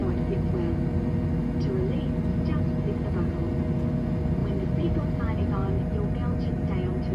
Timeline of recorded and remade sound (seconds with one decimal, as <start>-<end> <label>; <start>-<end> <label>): 0.0-4.4 recorded; 4.4-5.0 remade; 5.0-7.1 recorded